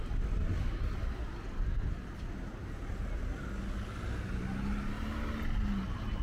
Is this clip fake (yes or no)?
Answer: no